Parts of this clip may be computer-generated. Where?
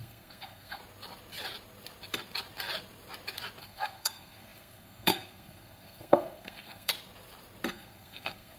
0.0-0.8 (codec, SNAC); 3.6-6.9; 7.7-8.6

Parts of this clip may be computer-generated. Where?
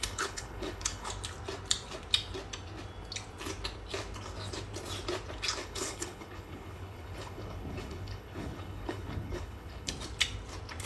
0.0-1.1 (codec, HILCodec); 5.6-9.9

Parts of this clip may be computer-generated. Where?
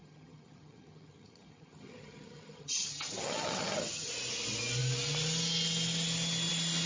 0.0-4.1 (vocoder, HiFi-GAN)